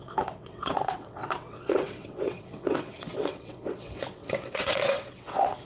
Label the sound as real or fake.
fake